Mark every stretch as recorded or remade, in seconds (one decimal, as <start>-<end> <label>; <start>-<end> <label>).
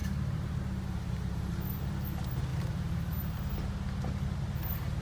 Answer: 0.0-1.5 remade; 1.5-2.5 recorded; 2.5-3.5 remade; 3.5-5.0 recorded